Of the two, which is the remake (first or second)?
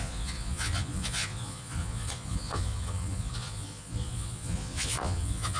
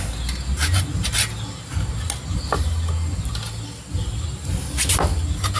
first